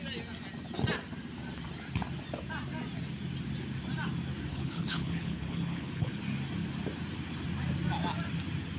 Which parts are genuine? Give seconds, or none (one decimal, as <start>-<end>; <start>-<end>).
0.0-4.5; 6.2-8.8

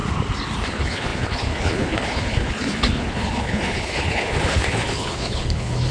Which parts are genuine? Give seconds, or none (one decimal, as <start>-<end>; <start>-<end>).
0.0-0.7

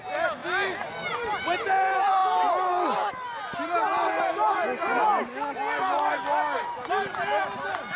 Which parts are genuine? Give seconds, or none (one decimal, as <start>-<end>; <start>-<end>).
0.0-8.0